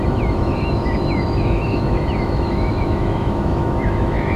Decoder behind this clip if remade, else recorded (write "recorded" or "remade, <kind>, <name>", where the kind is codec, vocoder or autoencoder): remade, autoencoder, DAC-VAE